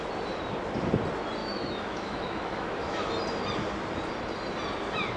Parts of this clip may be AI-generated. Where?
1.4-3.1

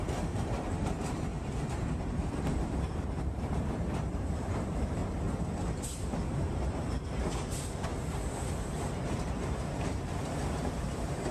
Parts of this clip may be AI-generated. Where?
0.0-5.0; 6.0-7.9; 8.5-11.3

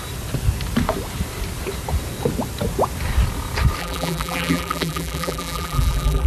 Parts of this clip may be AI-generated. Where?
3.8-6.3